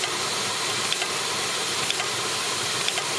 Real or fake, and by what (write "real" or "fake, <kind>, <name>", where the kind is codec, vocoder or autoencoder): real